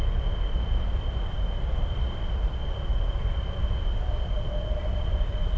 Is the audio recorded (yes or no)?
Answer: yes